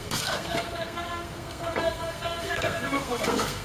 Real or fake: fake